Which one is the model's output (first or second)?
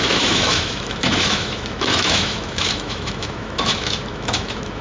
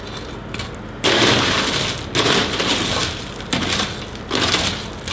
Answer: first